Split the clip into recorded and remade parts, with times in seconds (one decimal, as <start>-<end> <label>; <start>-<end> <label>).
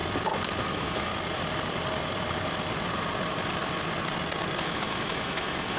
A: 0.0-0.6 recorded; 0.6-1.1 remade; 1.1-4.6 recorded; 4.6-5.8 remade